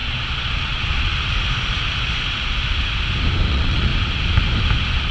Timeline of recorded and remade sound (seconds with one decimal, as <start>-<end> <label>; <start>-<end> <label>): 0.0-1.1 remade; 1.1-3.5 recorded; 3.5-3.9 remade; 3.9-5.1 recorded